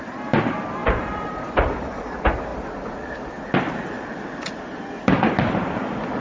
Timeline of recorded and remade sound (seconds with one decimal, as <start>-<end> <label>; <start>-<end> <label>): 0.0-0.8 recorded; 0.8-2.1 remade; 2.1-6.2 recorded